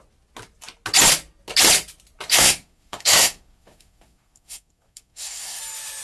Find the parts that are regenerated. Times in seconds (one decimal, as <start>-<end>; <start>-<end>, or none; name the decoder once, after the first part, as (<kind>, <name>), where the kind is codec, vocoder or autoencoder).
2.3-5.6 (codec, SNAC)